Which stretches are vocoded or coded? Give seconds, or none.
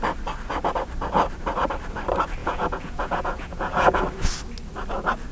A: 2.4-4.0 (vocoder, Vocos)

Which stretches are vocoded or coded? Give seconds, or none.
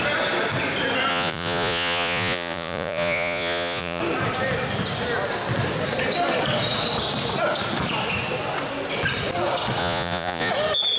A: 1.1-4.0 (vocoder, Vocos); 9.8-10.5